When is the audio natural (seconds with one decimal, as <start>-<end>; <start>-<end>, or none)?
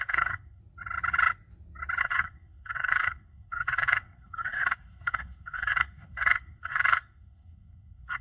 0.6-2.0